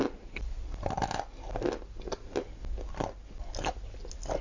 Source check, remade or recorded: recorded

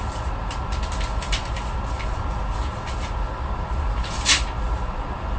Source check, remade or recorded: remade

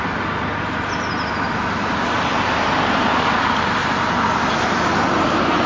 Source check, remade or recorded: recorded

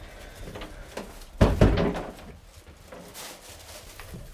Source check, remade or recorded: recorded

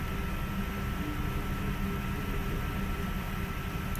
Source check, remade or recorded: recorded